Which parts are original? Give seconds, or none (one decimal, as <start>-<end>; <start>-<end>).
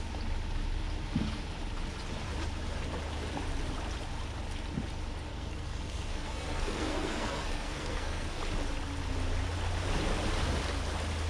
0.0-5.3; 8.4-11.3